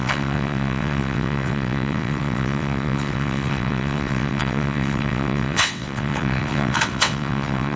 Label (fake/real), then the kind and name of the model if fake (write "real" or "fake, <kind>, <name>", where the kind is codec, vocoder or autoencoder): fake, vocoder, WaveNeXt